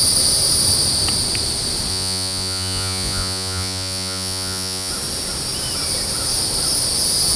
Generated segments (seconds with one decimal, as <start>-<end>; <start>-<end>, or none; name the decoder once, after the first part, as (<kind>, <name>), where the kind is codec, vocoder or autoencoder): 1.9-4.9 (vocoder, Vocos)